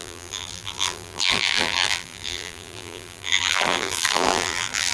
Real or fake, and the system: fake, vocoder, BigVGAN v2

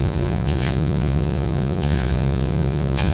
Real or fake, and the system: fake, vocoder, Vocos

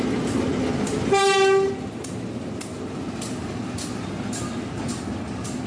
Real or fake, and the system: real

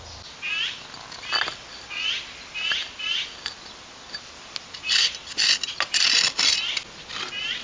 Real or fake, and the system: real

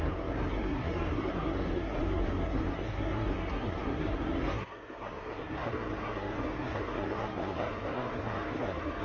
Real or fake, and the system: fake, codec, SNAC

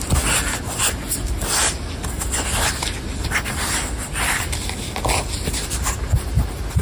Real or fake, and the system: real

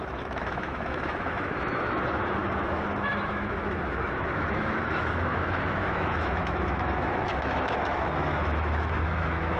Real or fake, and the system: fake, autoencoder, DAC-VAE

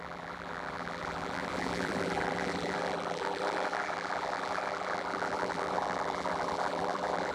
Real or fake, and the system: fake, vocoder, BigVGAN v2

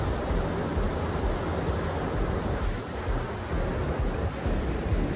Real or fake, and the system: real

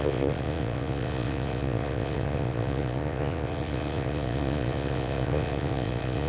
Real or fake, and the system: fake, vocoder, Vocos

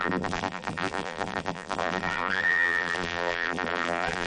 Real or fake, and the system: fake, vocoder, BigVGAN v2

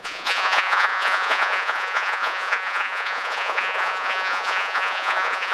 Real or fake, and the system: fake, vocoder, Vocos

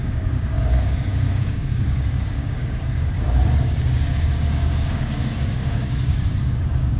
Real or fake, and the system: fake, codec, DAC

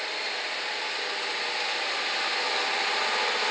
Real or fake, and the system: real